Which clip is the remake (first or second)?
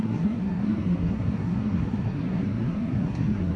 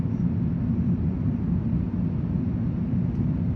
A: first